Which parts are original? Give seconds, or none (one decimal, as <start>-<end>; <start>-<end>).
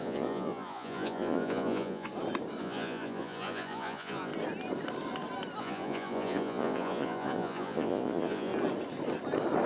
2.1-2.6; 4.3-5.6; 8.5-9.7